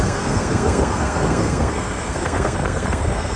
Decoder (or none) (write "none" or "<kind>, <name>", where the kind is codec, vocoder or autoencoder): codec, SNAC